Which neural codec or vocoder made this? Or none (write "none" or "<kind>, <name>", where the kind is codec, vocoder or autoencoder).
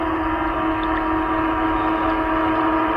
none